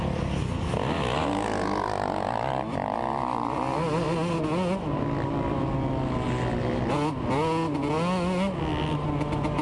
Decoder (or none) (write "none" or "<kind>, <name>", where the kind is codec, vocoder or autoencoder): none